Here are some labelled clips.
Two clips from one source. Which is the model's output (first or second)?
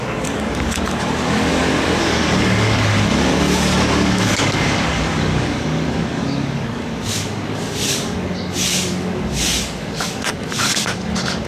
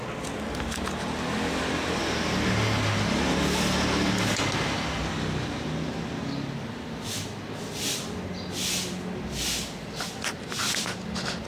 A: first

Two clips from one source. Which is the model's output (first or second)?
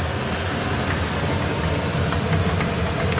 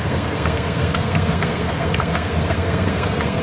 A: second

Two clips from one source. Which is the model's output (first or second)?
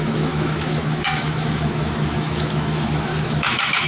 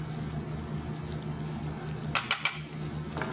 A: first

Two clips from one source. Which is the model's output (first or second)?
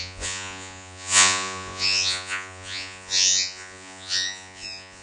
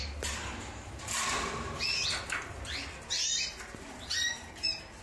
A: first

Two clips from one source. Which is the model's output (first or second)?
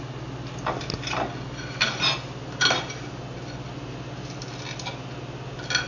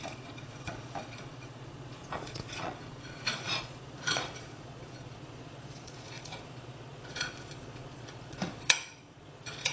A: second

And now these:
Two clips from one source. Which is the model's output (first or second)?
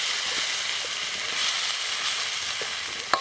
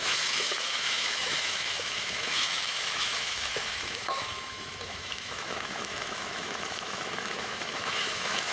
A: second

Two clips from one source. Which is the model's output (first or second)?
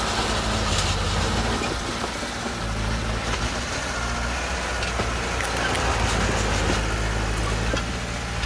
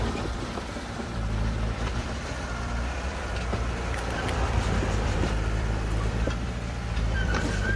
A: second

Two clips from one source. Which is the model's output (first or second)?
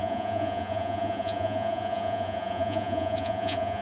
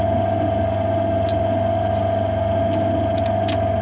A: first